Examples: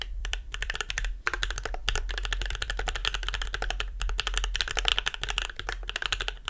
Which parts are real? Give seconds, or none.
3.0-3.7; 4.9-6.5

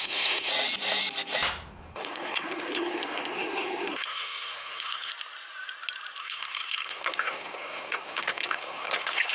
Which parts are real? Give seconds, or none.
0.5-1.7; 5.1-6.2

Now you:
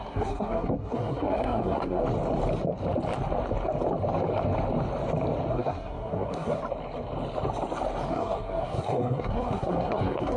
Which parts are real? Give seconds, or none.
2.0-5.5; 6.6-8.1

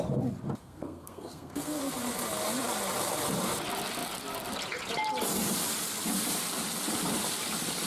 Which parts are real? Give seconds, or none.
0.0-0.6; 1.8-7.9

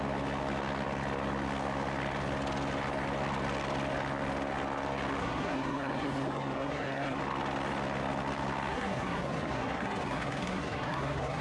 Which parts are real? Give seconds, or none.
0.0-5.2; 7.2-8.7